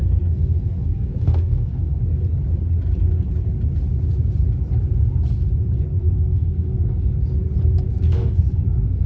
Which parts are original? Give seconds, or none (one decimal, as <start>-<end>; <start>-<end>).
2.0-6.0; 7.1-7.9